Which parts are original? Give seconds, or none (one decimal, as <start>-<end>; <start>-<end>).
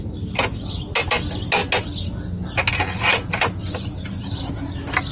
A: 0.0-5.1